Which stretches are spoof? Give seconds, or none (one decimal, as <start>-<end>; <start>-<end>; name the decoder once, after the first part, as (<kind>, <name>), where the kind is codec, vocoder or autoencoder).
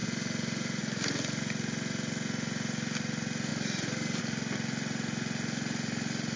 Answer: 0.0-0.8 (vocoder, BigVGAN v2)